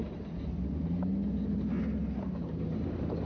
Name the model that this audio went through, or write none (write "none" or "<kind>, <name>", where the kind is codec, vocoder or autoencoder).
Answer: none